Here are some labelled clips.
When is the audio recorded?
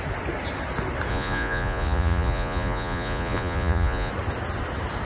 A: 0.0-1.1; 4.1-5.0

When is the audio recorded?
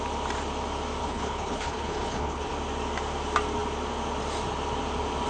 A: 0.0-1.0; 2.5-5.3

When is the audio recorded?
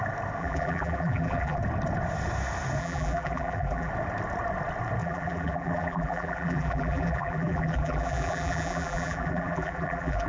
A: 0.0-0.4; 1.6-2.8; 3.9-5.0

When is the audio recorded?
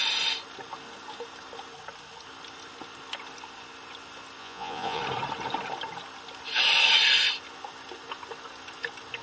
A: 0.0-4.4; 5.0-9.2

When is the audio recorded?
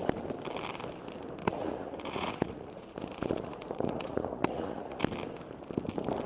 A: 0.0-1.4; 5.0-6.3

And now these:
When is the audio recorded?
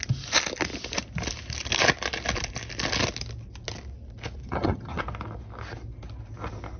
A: 0.0-4.4; 5.0-6.8